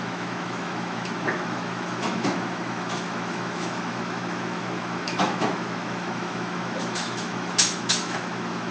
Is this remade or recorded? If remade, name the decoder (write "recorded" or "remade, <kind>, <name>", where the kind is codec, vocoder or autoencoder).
remade, autoencoder, DAC-VAE